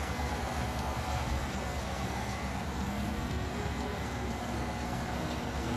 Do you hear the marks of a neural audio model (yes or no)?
yes